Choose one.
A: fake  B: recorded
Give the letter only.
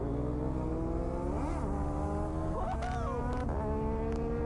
B